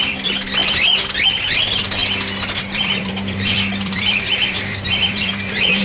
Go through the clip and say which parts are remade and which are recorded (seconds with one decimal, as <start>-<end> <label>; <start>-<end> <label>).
0.0-2.0 remade; 2.0-2.6 recorded; 2.6-5.8 remade